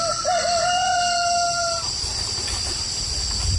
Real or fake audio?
fake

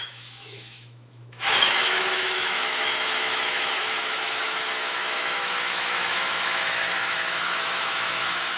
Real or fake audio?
fake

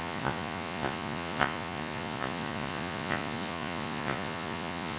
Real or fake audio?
fake